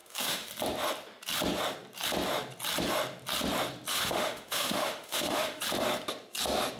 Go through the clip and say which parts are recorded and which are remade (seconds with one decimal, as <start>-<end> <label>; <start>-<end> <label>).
0.0-0.5 remade; 0.5-3.9 recorded; 3.9-5.6 remade; 5.6-6.8 recorded